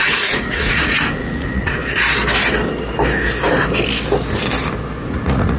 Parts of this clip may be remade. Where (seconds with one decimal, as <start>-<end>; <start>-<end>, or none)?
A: 0.0-1.8; 5.0-5.6